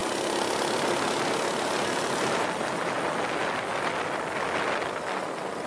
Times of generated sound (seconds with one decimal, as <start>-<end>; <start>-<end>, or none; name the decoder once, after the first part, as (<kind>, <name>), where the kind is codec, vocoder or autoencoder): none